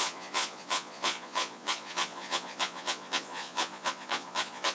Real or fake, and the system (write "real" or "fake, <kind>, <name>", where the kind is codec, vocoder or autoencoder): fake, vocoder, Vocos